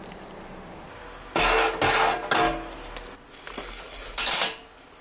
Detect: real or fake real